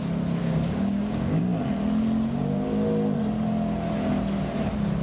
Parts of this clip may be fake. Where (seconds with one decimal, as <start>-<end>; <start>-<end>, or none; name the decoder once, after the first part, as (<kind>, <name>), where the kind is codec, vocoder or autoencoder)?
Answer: 0.4-1.4 (codec, DAC)